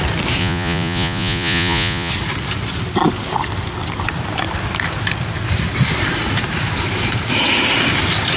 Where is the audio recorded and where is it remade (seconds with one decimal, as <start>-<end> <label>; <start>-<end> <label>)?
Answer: 0.0-0.4 recorded; 0.4-2.1 remade; 2.1-8.4 recorded